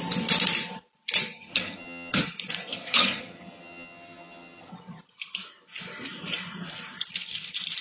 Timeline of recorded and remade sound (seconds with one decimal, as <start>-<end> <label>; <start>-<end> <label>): 0.0-1.5 recorded; 1.5-2.2 remade; 2.2-2.7 recorded; 2.7-4.7 remade; 4.7-7.8 recorded